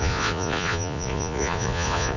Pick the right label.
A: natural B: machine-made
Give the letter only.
B